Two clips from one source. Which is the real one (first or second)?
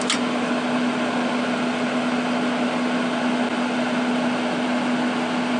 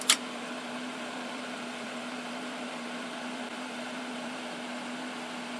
first